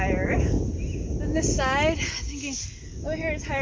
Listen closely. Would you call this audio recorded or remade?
recorded